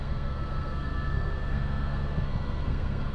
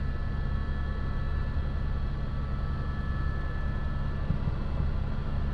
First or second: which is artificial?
first